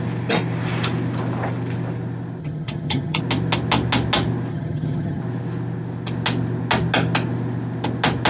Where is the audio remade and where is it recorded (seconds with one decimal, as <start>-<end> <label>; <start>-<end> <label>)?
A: 0.0-2.4 recorded; 2.4-3.2 remade; 3.2-4.5 recorded; 4.5-5.2 remade; 5.2-8.3 recorded

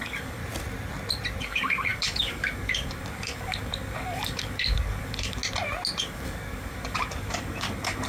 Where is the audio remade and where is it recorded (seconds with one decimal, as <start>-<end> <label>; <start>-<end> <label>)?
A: 0.0-0.4 remade; 0.4-1.4 recorded; 1.4-5.4 remade; 5.4-6.0 recorded; 6.0-8.1 remade